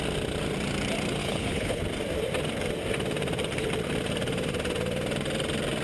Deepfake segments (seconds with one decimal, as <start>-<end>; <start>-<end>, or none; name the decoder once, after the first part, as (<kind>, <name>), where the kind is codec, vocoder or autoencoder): 1.2-1.8 (codec, HILCodec)